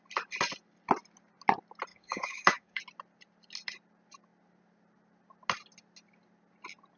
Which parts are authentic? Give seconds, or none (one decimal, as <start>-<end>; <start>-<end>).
0.0-1.9; 2.8-7.0